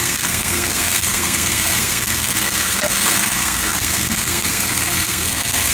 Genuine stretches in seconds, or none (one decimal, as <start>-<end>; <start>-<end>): none